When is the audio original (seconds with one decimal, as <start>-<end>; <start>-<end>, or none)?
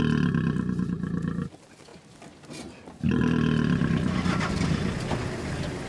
0.0-5.9